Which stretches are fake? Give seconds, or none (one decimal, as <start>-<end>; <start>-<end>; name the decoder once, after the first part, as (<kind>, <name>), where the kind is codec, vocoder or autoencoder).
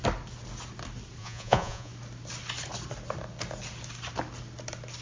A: 1.2-1.9 (vocoder, Vocos)